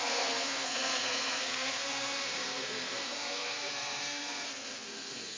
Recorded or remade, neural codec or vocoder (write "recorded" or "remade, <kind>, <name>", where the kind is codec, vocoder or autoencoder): remade, codec, SNAC